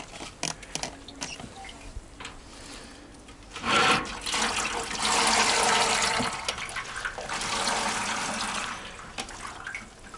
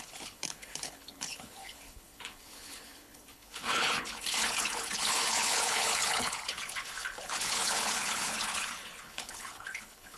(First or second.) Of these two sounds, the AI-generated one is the second